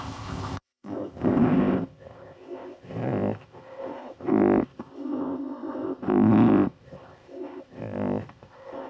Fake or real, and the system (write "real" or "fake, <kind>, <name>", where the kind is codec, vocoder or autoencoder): fake, codec, ZipCodec